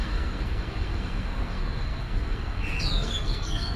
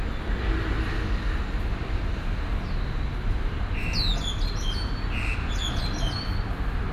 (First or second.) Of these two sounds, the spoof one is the first